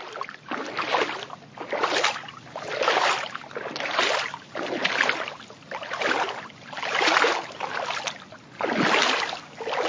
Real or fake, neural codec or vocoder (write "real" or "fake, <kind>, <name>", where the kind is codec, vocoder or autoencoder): real